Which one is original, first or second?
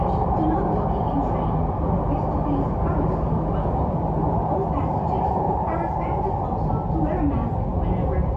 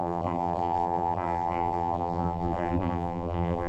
first